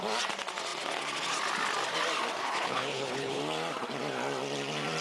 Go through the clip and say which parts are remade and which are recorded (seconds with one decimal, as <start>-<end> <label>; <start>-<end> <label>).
0.0-2.4 recorded; 2.4-3.4 remade; 3.4-5.0 recorded